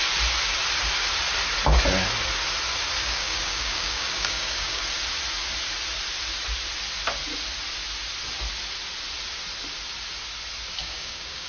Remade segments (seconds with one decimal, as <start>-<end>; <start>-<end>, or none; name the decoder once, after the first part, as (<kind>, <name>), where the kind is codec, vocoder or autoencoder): 3.0-4.8 (codec, DAC); 10.8-11.5